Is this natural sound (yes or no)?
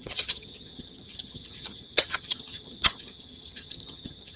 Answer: no